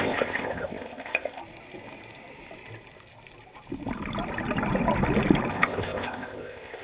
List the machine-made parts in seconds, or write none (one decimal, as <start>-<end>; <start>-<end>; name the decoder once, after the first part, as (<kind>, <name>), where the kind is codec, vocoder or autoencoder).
0.0-1.4 (codec, ZipCodec); 5.5-6.8